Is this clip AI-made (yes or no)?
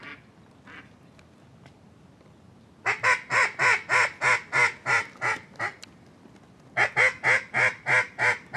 no